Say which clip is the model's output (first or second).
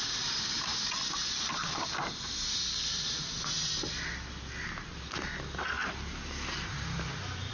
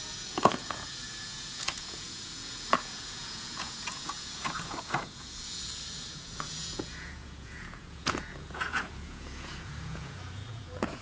second